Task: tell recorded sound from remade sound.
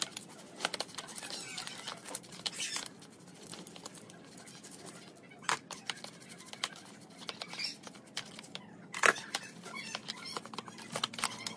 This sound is recorded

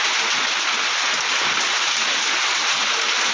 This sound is recorded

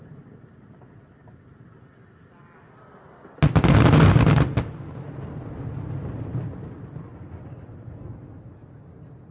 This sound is recorded